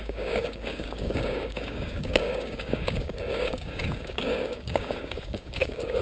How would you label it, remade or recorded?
remade